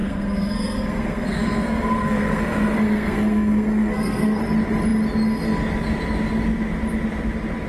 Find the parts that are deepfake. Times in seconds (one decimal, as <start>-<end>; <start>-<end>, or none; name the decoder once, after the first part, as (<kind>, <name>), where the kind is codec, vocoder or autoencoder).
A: 0.0-4.4 (codec, SNAC)